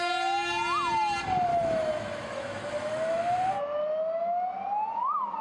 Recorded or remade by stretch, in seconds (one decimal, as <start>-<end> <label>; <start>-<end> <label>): 0.0-1.5 recorded; 1.5-3.2 remade; 3.2-5.4 recorded